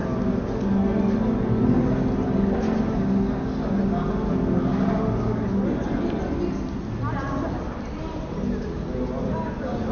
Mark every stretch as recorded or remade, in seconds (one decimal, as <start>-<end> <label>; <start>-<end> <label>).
0.0-9.9 recorded